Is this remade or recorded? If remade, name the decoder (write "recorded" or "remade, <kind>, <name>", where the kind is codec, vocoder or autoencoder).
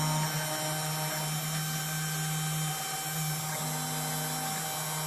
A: recorded